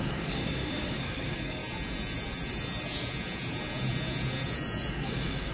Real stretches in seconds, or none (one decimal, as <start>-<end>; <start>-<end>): 1.6-4.9